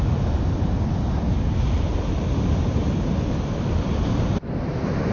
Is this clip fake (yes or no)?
no